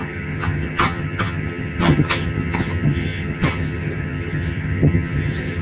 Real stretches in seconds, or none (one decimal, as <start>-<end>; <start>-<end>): none